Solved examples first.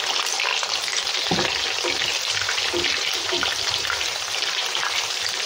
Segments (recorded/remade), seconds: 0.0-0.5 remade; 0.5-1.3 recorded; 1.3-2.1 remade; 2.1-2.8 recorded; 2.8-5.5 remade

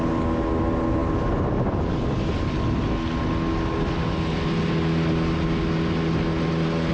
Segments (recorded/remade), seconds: 0.0-6.9 recorded

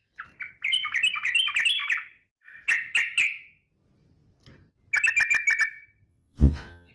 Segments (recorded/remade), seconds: 0.0-6.1 recorded; 6.1-6.9 remade

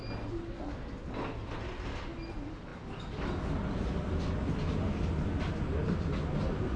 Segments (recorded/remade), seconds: 0.0-6.8 recorded

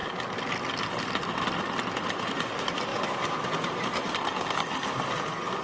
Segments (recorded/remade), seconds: 0.0-5.6 recorded

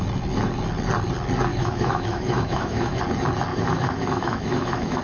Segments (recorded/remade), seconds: 0.0-1.5 recorded; 1.5-3.0 remade; 3.0-3.5 recorded; 3.5-5.0 remade

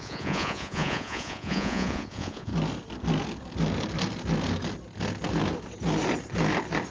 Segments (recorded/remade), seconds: 0.0-2.5 remade; 2.5-6.9 recorded